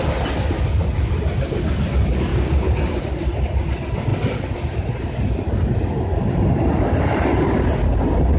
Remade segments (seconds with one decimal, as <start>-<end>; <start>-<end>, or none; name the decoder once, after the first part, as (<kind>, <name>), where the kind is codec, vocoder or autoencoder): 2.3-3.0 (codec, DAC)